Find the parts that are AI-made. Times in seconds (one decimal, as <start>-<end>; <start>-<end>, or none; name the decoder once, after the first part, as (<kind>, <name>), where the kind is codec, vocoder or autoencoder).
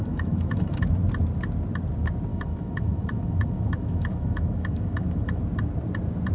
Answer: 0.0-0.8 (autoencoder, DAC-VAE); 2.3-5.4